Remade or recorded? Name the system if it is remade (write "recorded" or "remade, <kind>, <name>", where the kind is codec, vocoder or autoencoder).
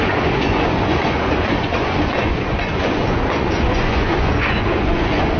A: remade, vocoder, Vocos